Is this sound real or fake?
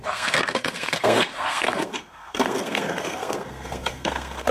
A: fake